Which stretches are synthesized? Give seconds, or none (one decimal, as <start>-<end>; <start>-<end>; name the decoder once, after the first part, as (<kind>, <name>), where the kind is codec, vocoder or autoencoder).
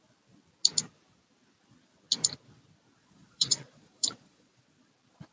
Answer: 3.0-4.6 (vocoder, Vocos)